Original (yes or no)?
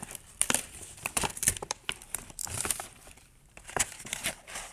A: no